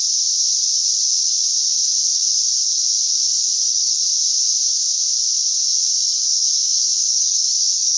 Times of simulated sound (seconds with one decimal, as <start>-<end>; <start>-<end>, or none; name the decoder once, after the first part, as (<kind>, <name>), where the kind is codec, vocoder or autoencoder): 2.1-2.8 (codec, DAC); 3.3-4.0; 5.9-8.0